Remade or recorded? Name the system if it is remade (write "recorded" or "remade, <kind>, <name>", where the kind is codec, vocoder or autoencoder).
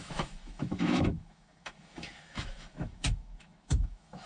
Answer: remade, autoencoder, DAC-VAE